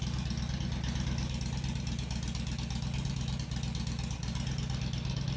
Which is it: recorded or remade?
recorded